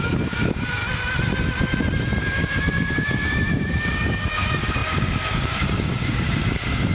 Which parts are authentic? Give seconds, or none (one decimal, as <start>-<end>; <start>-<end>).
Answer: 0.8-2.2